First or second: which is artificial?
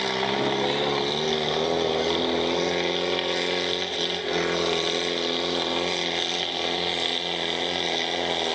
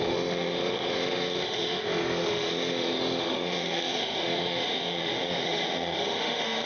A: second